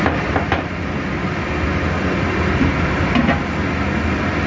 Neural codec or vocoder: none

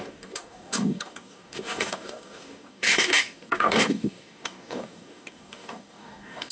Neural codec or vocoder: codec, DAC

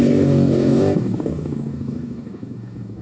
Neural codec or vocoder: codec, DAC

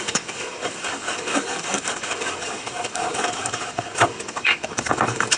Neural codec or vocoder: codec, DAC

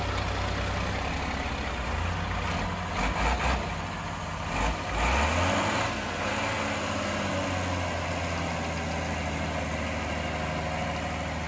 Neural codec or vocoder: none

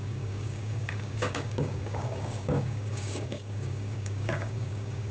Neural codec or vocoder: codec, DAC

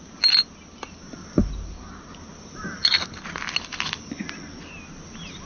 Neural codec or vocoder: none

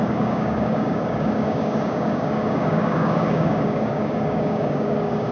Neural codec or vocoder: codec, DAC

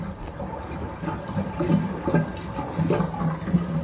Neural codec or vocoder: none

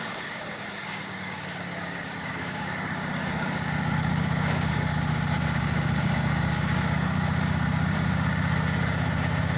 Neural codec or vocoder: codec, DAC